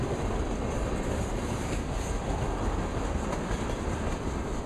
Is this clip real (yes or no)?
yes